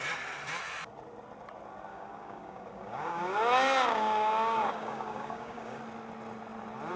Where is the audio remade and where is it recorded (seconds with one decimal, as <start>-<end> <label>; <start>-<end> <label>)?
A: 0.0-1.9 recorded; 1.9-5.8 remade; 5.8-7.0 recorded